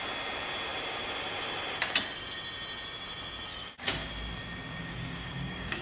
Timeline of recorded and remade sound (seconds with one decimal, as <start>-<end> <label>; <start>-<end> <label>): 0.0-3.5 recorded; 3.5-4.1 remade; 4.1-4.8 recorded; 4.8-5.8 remade